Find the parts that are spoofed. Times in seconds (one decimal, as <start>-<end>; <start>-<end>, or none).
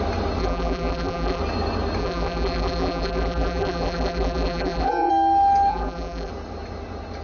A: 0.4-1.4; 2.0-5.1; 5.7-6.3